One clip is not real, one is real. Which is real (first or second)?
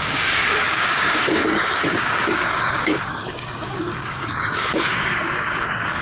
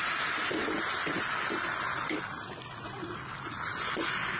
second